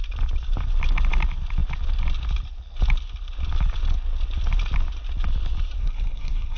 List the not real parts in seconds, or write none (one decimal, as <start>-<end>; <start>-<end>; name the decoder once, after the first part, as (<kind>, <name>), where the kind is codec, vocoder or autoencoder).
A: 5.8-6.6 (codec, SNAC)